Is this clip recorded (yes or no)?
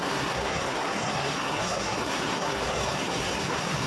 no